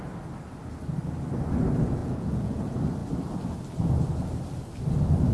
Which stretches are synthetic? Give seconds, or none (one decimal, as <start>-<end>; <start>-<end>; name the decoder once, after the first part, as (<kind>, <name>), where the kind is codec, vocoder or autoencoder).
2.0-2.5 (vocoder, Vocos)